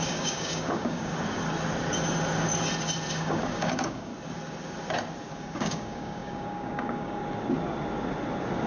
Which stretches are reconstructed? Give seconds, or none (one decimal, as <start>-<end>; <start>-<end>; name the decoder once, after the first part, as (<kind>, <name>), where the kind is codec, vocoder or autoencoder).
0.0-1.1 (codec, DAC); 3.1-4.1; 5.3-7.2